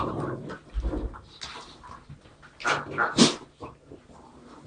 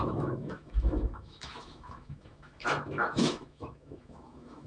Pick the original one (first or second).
first